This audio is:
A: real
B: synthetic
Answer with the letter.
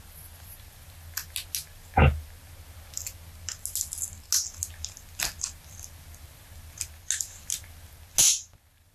A